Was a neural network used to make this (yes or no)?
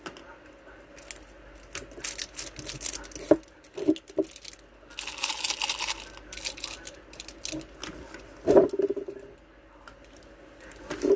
no